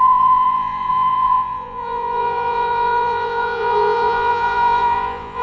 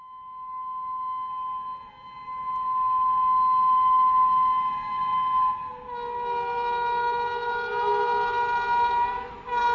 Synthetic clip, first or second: first